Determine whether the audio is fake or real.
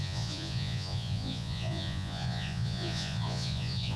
fake